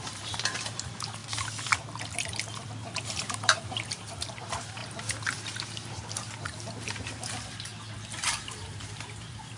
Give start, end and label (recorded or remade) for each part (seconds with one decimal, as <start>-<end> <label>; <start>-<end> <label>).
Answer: 0.0-1.2 remade; 1.2-3.3 recorded; 3.3-4.8 remade; 4.8-6.4 recorded; 6.4-7.7 remade; 7.7-8.4 recorded; 8.4-9.6 remade